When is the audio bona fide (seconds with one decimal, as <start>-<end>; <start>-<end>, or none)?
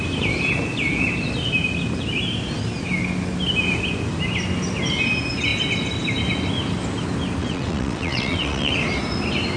0.0-7.4; 8.7-9.6